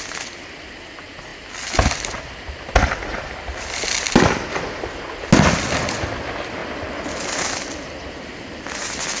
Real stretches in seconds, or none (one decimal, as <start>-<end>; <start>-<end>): 0.0-9.2